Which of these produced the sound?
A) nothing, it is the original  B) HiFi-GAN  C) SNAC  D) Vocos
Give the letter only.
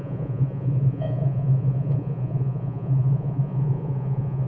D